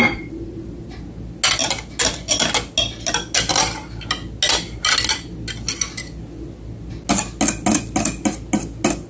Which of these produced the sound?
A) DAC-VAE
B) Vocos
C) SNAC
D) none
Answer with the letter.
D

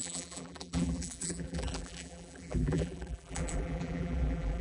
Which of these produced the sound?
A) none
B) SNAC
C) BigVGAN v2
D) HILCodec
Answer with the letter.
C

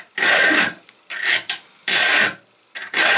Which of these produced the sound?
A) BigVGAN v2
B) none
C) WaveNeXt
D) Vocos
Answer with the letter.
A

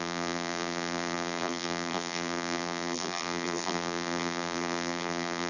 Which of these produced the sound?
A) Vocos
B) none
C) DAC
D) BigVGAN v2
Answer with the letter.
D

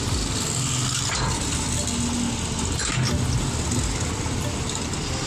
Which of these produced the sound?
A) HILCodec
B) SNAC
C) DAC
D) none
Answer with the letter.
D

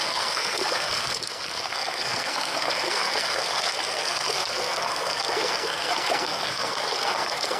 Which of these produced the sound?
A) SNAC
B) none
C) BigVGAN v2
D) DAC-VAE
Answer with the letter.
A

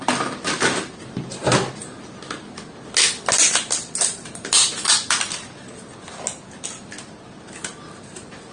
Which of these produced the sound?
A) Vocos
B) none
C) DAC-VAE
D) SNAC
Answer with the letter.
B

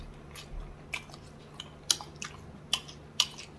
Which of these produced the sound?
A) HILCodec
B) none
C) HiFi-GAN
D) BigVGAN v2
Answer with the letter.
B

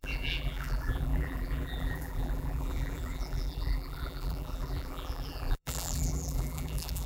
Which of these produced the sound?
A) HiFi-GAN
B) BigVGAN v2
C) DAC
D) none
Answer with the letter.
B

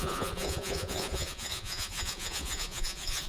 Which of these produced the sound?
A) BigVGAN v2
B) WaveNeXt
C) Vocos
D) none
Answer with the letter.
C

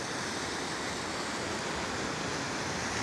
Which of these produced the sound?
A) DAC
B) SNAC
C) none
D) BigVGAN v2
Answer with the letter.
C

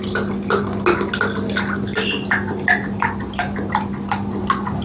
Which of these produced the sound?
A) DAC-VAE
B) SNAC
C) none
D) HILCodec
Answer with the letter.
C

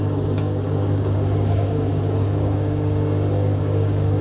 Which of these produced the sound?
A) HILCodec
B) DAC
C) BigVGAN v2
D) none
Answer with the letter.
B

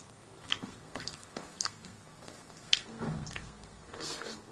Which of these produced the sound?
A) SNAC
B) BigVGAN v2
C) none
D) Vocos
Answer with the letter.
A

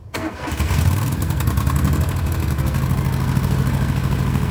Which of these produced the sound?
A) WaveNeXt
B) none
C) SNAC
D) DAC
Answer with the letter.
C